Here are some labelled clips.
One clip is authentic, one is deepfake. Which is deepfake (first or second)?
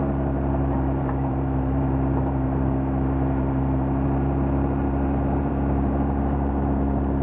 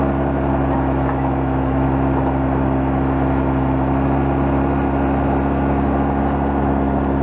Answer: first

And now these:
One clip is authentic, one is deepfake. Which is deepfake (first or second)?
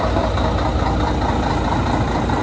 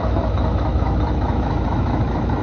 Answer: second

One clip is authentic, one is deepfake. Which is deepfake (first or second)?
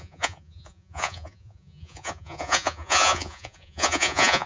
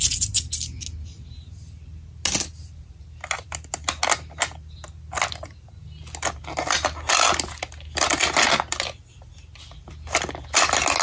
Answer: first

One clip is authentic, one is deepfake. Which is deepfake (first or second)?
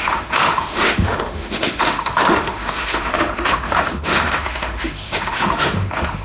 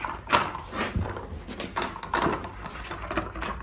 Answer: first